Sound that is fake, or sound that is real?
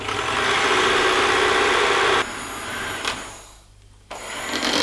real